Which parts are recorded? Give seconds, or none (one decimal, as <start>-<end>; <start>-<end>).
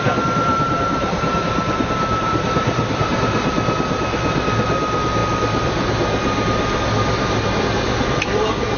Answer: 0.0-0.5; 3.1-8.8